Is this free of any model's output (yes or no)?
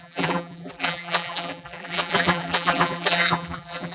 no